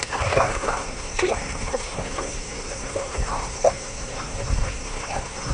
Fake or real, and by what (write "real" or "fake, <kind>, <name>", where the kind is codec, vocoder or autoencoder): fake, codec, SNAC